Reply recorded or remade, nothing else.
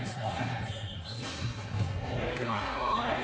remade